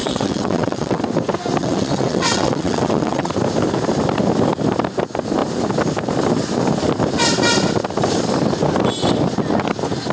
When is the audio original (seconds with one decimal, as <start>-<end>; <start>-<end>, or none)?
1.0-1.6; 3.3-10.1